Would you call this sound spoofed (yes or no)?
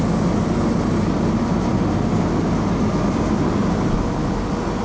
no